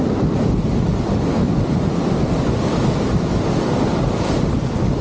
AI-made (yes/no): no